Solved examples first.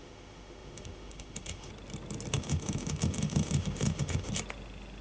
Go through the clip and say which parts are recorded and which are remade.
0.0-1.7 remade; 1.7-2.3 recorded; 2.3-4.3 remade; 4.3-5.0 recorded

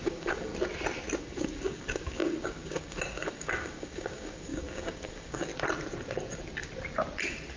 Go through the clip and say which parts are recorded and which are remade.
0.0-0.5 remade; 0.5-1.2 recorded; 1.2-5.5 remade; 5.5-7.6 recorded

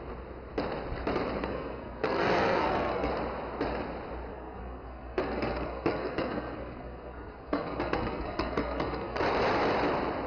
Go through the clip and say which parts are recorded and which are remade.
0.0-1.4 recorded; 1.4-3.1 remade; 3.1-4.3 recorded; 4.3-9.2 remade; 9.2-10.3 recorded